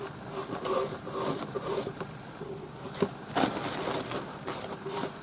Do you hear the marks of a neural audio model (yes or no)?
no